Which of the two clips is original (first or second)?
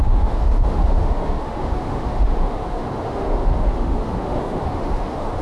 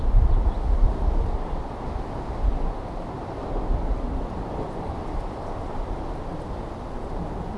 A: second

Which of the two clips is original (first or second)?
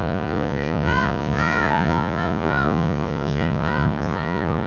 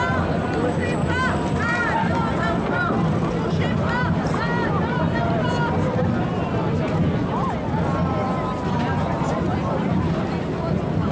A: second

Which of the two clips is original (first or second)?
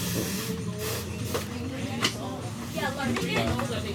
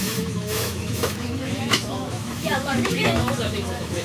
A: first